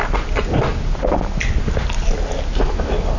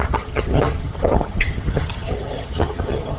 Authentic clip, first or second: first